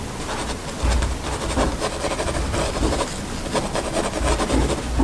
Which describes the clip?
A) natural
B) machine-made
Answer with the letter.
A